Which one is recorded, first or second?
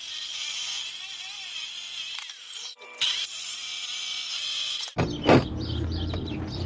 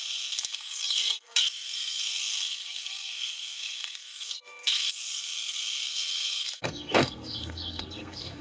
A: first